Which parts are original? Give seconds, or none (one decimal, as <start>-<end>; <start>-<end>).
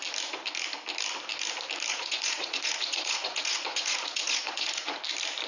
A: 0.0-1.9; 5.0-5.5